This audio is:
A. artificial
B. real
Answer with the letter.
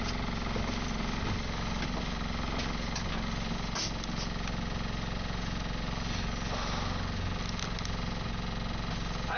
B